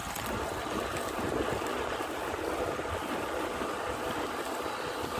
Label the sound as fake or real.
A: real